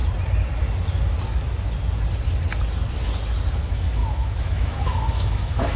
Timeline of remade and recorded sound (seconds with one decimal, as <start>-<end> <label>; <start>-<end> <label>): 0.0-3.5 recorded; 3.5-5.8 remade